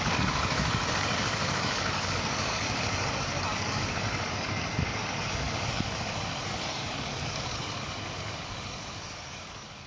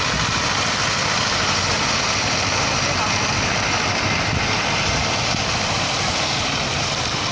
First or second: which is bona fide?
second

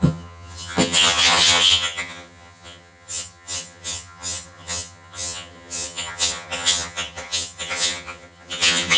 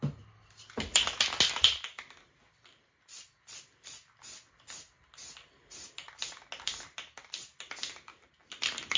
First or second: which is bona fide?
second